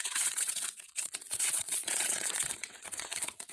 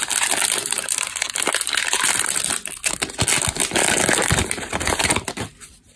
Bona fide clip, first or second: second